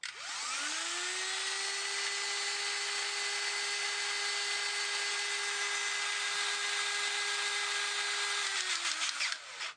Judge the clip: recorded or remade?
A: recorded